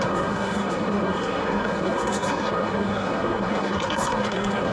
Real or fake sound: fake